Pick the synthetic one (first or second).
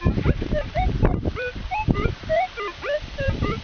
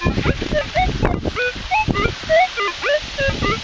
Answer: first